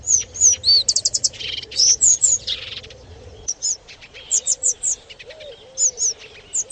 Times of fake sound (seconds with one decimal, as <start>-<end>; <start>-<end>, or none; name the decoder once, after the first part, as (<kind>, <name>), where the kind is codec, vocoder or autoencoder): 0.0-0.4 (vocoder, Vocos); 1.1-4.7